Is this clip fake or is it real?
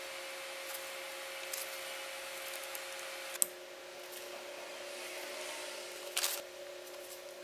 real